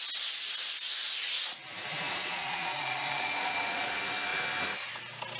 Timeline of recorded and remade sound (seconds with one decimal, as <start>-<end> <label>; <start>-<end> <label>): 0.0-2.2 recorded; 2.2-3.9 remade; 3.9-5.4 recorded